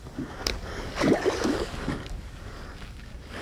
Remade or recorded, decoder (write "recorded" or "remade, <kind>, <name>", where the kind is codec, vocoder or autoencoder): remade, codec, DAC